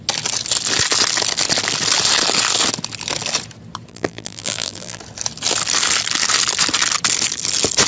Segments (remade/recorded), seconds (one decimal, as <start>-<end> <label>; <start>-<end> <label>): 0.0-3.9 recorded; 3.9-5.0 remade; 5.0-7.9 recorded